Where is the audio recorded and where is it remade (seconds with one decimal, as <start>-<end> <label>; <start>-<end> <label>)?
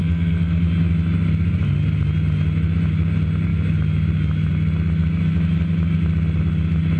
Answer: 0.0-0.6 remade; 0.6-7.0 recorded